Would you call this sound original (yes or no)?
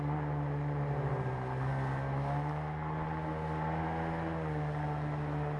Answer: yes